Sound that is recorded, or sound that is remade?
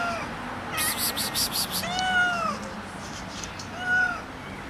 recorded